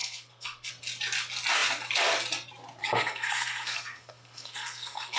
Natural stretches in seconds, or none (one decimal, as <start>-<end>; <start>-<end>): 0.7-2.8